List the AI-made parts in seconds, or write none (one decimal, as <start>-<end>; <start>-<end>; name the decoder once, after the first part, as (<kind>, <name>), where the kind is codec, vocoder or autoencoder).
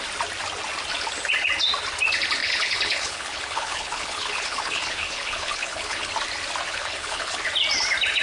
2.4-6.1 (codec, HILCodec); 6.7-7.4